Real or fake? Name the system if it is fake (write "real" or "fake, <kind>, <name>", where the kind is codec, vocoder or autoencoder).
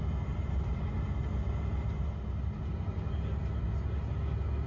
real